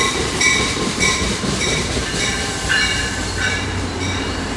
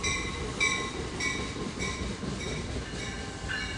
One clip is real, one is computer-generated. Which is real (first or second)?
second